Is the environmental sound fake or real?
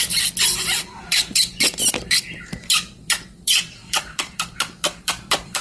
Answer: fake